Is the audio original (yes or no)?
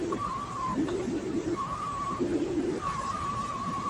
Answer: no